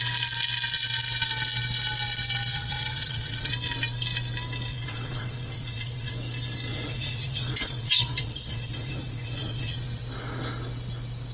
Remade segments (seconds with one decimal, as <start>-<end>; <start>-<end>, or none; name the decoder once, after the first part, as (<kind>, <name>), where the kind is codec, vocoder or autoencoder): 2.5-3.5 (vocoder, WaveNeXt); 4.7-6.1; 6.7-10.0